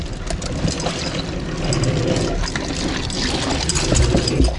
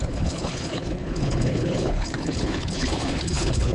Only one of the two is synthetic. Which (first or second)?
second